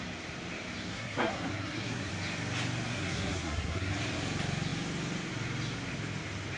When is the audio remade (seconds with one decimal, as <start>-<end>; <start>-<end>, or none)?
0.9-2.1; 2.9-3.9